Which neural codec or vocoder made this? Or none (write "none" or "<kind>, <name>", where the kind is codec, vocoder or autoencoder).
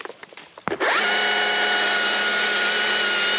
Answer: none